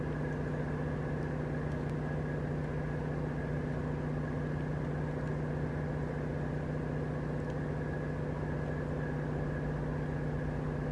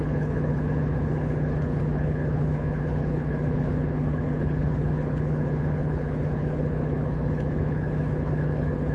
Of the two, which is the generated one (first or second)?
second